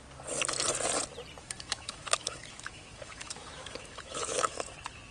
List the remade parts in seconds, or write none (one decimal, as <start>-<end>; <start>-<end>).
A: 1.4-4.5